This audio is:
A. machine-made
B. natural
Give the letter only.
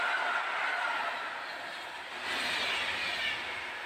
B